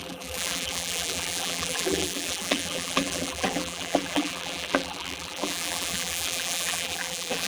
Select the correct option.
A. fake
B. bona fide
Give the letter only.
A